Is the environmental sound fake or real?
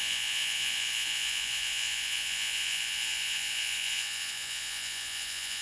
fake